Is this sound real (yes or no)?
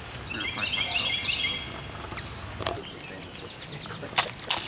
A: yes